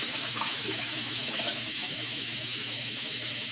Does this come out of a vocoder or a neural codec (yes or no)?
yes